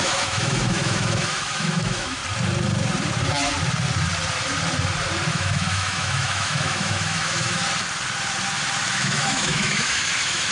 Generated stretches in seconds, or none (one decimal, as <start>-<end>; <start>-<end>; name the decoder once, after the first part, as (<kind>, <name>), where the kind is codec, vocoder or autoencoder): 0.0-2.2 (autoencoder, DAC-VAE); 5.3-7.6; 8.9-10.5